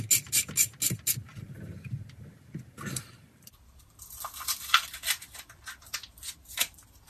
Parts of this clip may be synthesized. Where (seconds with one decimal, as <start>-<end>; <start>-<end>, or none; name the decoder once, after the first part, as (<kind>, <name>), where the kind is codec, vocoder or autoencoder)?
1.3-5.6 (vocoder, BigVGAN v2)